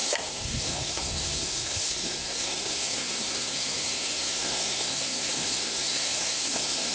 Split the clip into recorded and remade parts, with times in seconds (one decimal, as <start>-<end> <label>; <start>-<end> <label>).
0.0-6.9 remade